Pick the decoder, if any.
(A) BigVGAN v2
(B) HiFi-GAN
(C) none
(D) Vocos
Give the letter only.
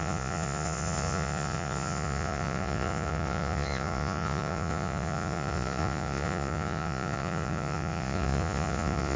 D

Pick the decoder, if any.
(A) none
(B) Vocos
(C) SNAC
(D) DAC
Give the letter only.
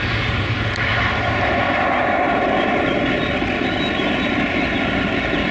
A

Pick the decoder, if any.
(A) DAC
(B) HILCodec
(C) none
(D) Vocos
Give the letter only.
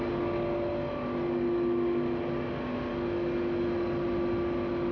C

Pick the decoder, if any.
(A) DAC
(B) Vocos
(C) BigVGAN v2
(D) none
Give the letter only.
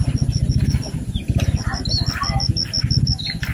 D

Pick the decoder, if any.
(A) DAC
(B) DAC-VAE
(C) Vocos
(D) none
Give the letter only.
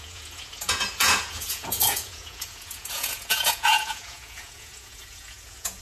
C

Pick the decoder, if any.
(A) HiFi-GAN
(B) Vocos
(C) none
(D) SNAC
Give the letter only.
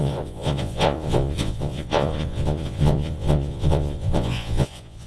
B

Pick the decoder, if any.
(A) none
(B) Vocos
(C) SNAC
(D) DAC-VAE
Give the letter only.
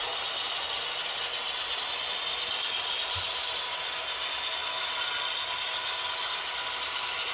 A